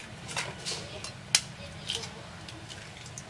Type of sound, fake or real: real